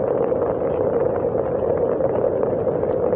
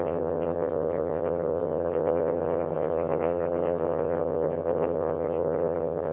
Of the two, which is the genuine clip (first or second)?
first